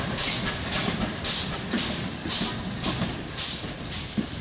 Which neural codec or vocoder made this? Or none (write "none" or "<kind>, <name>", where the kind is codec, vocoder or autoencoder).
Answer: vocoder, BigVGAN v2